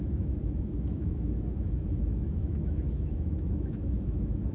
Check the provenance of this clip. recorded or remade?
remade